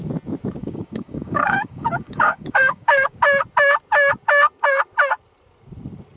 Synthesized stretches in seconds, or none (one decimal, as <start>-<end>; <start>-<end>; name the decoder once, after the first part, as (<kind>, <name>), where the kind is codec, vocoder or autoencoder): 0.6-3.2 (codec, DAC)